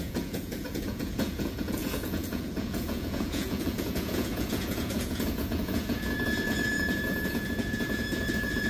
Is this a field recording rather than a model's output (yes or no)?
no